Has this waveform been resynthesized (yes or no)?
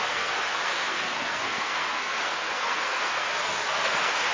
yes